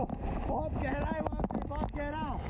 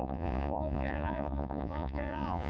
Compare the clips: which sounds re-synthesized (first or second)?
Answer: second